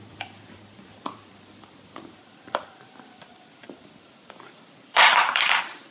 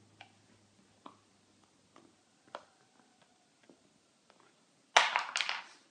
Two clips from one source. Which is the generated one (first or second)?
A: first